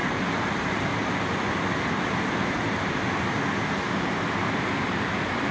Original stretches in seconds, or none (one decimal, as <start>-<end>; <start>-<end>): 0.0-0.5; 0.9-4.2